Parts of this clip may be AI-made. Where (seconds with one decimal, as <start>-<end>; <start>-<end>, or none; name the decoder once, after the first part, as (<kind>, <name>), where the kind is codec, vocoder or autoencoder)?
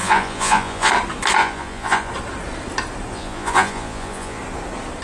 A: 0.0-0.9 (vocoder, Vocos); 1.4-2.1; 3.1-4.4